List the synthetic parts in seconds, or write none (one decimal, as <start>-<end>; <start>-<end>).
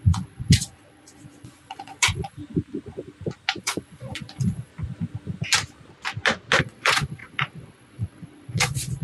0.0-2.4; 3.6-4.7; 6.6-9.0